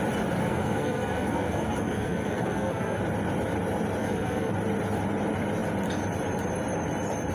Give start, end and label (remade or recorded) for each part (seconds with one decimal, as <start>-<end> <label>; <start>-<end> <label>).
0.0-0.4 recorded; 0.4-3.0 remade; 3.0-4.0 recorded; 4.0-4.5 remade; 4.5-7.3 recorded